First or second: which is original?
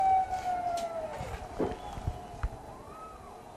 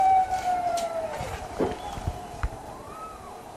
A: first